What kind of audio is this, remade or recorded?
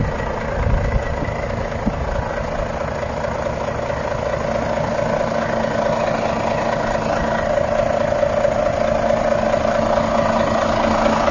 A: recorded